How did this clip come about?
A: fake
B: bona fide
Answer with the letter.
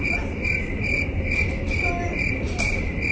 B